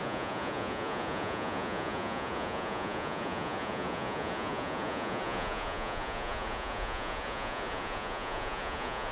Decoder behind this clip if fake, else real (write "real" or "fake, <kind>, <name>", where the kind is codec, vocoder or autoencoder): fake, vocoder, Vocos